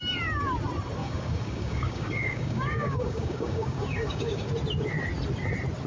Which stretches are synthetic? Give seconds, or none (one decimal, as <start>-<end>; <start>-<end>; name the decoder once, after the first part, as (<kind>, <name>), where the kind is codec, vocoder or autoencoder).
1.0-4.5 (codec, DAC)